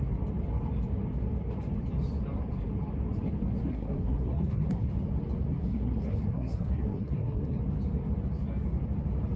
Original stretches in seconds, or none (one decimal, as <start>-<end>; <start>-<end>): 0.0-3.7; 4.9-5.5; 7.6-9.4